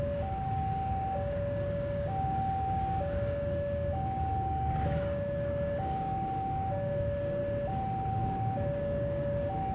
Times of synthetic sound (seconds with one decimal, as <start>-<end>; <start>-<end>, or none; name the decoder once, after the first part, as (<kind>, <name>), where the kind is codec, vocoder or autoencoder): 0.0-7.4 (codec, DAC); 8.1-9.7